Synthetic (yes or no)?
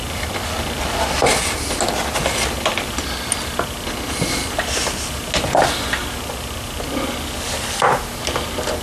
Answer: no